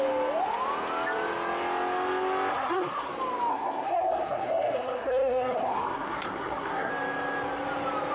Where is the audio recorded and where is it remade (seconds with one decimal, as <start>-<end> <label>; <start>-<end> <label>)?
0.0-2.5 recorded; 2.5-3.1 remade; 3.1-3.5 recorded; 3.5-6.9 remade; 6.9-8.1 recorded